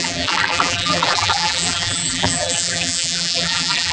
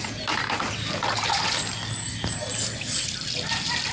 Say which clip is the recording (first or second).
second